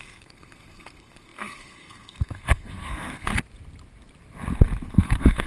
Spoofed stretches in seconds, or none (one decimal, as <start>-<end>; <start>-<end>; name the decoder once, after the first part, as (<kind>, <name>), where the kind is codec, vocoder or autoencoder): 0.0-3.3 (codec, SNAC); 4.9-5.5